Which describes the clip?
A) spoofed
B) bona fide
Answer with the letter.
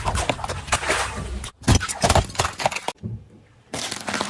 B